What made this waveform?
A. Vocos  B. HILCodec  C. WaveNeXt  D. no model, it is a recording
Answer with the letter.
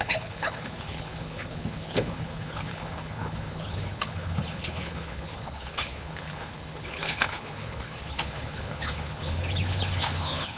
B